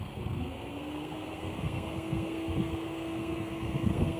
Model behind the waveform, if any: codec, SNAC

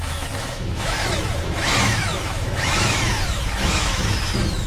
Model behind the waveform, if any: autoencoder, DAC-VAE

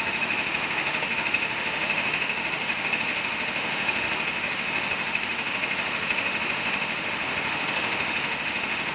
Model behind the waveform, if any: autoencoder, DAC-VAE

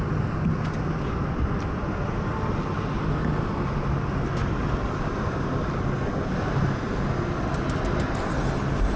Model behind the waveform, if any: none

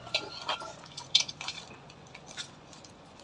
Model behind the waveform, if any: vocoder, Vocos